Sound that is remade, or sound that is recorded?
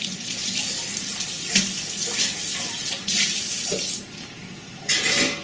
recorded